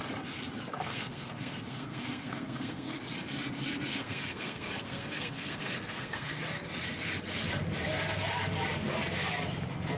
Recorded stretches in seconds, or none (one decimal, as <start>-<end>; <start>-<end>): 0.0-0.9; 3.0-3.9; 6.4-10.0